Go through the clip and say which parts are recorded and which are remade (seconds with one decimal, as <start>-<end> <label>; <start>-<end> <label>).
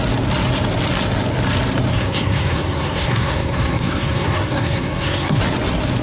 0.0-1.9 recorded; 1.9-5.4 remade; 5.4-6.0 recorded